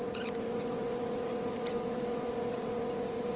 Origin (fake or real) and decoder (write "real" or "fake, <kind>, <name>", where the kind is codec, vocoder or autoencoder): fake, vocoder, Vocos